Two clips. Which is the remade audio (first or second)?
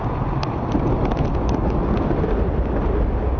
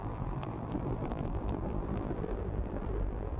second